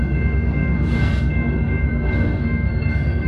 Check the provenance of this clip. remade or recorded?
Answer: remade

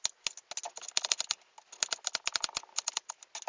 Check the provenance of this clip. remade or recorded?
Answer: recorded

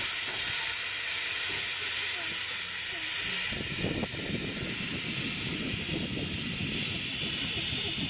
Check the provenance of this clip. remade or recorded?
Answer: recorded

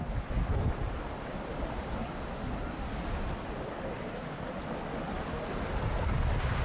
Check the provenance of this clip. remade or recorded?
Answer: recorded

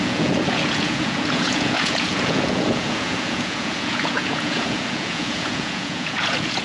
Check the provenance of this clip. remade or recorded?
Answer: remade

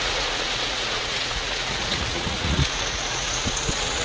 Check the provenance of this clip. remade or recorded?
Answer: remade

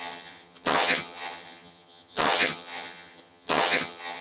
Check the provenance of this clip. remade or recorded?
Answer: remade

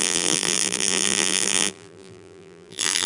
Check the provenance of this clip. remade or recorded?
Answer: remade